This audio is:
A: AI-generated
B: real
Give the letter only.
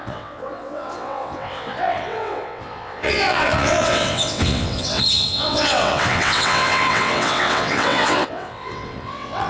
A